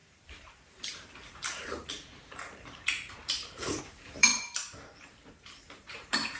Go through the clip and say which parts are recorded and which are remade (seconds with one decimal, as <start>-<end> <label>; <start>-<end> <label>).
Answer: 0.0-4.3 remade; 4.3-5.1 recorded; 5.1-6.4 remade